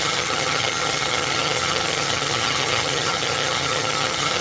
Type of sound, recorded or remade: remade